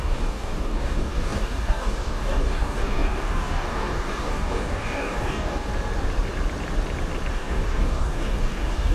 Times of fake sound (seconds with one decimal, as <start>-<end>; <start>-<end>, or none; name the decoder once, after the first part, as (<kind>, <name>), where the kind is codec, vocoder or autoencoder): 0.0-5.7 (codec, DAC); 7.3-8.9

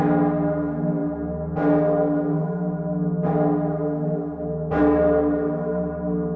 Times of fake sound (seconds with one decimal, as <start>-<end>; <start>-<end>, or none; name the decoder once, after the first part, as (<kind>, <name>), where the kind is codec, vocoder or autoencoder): none

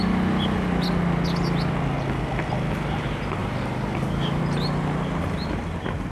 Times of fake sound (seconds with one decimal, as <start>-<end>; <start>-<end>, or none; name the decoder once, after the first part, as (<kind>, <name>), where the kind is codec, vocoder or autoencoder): 3.4-4.4 (codec, DAC)